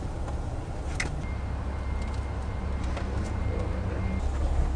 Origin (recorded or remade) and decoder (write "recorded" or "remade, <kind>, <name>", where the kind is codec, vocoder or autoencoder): recorded